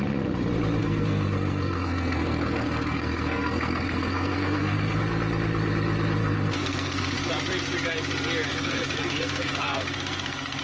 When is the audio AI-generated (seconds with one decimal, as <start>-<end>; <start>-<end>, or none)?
0.8-5.0; 6.2-7.3; 8.5-10.6